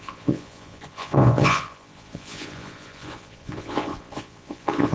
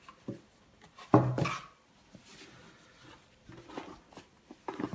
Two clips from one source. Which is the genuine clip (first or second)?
second